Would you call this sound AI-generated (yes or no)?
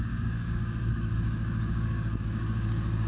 yes